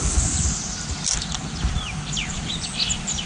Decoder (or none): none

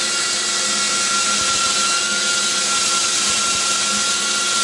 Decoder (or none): none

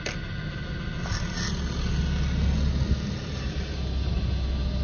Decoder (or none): none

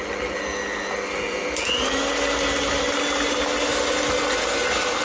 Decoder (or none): none